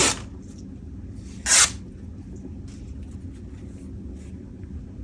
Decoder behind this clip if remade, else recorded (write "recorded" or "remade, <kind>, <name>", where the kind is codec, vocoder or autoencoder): recorded